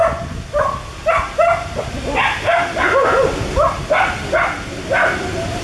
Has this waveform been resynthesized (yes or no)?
no